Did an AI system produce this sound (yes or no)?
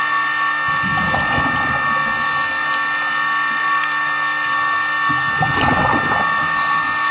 no